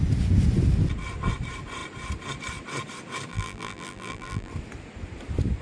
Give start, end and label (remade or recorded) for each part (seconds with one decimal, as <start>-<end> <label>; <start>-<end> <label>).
0.0-3.3 recorded; 3.3-4.5 remade; 4.5-5.6 recorded